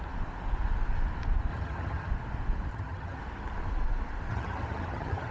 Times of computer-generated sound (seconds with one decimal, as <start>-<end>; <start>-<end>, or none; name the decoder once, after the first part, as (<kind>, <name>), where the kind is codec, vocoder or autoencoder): 1.5-2.1 (vocoder, HiFi-GAN); 2.7-3.2; 4.3-5.3

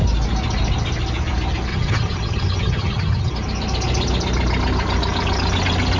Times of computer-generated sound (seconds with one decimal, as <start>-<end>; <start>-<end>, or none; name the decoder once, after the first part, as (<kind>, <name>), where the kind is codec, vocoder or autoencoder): 1.7-3.3 (vocoder, HiFi-GAN)

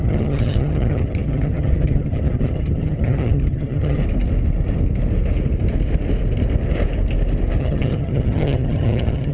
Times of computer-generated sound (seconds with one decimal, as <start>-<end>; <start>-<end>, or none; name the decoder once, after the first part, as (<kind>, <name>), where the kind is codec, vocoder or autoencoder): 0.0-4.0 (vocoder, HiFi-GAN); 7.6-9.3

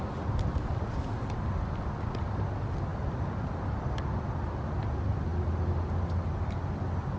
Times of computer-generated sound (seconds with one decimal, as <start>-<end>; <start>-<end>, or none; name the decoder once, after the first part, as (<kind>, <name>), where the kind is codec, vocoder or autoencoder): none

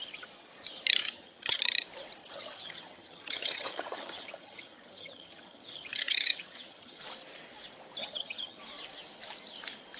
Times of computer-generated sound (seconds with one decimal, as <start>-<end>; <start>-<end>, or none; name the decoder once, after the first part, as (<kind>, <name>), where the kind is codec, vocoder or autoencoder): 1.0-1.6 (vocoder, HiFi-GAN); 2.2-7.0; 8.0-8.6